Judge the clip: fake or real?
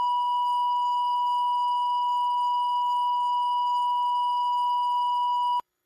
fake